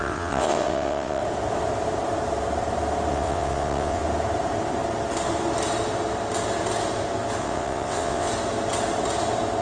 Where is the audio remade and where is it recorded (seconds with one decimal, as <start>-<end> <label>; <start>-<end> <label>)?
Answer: 0.0-1.2 remade; 1.2-3.1 recorded; 3.1-4.0 remade; 4.0-7.4 recorded; 7.4-8.3 remade; 8.3-9.6 recorded